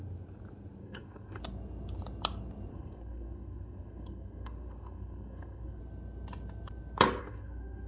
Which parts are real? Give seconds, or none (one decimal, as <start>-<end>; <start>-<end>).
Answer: 0.0-0.8; 1.4-2.7; 5.8-7.2